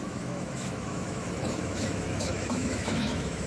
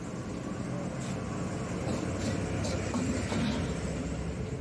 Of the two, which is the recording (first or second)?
second